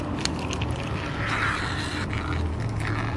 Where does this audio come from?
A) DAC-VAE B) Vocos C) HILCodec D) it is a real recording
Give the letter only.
D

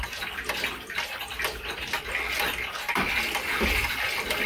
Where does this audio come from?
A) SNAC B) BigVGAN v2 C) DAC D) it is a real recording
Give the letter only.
D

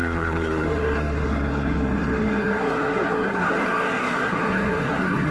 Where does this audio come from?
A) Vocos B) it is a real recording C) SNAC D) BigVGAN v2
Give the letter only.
C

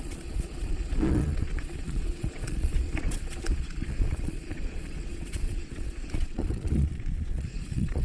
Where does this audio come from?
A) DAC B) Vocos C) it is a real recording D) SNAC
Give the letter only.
B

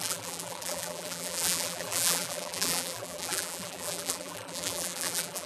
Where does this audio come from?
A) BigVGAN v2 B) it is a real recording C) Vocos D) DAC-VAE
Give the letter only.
A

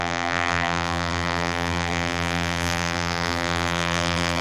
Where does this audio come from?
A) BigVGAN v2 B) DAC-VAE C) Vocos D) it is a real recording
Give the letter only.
A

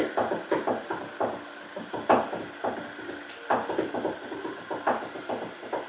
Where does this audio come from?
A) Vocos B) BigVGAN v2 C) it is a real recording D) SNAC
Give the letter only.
C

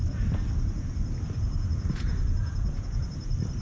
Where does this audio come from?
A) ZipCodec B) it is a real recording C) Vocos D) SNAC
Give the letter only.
C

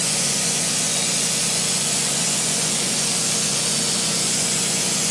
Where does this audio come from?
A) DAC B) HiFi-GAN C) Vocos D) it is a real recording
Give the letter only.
C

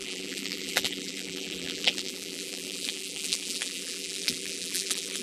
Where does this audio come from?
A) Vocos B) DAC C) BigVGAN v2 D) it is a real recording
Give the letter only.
C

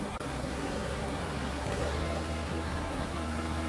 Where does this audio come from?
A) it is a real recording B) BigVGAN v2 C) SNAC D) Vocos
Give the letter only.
C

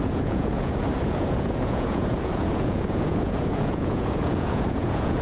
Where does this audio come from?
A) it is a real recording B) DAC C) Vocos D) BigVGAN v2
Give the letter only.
C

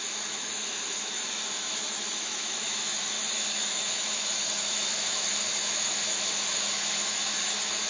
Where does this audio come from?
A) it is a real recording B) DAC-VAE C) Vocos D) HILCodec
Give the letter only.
B